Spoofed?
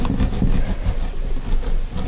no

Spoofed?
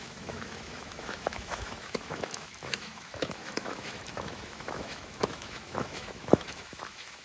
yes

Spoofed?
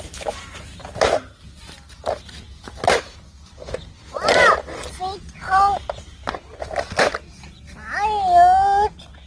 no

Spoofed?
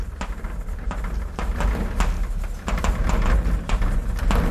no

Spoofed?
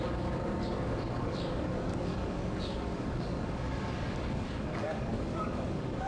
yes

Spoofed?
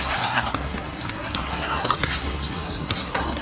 yes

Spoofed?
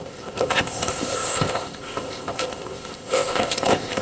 yes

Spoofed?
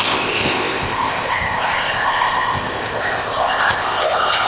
yes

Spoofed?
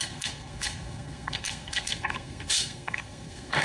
yes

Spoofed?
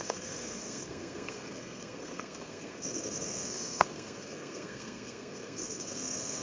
yes